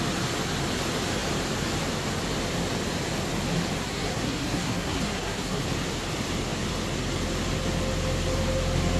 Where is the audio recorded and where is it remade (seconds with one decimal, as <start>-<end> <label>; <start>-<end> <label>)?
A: 0.0-3.8 recorded; 3.8-5.6 remade; 5.6-9.0 recorded